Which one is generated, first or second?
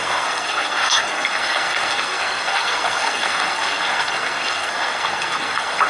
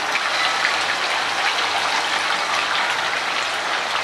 first